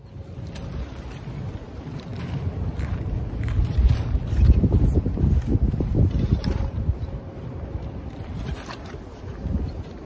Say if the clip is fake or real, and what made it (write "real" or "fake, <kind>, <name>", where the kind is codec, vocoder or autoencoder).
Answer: real